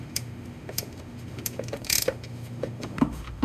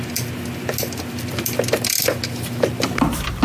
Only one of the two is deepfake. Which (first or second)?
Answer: first